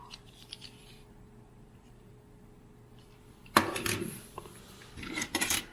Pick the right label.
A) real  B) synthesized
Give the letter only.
B